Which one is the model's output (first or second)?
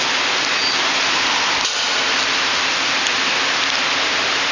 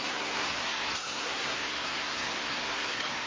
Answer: second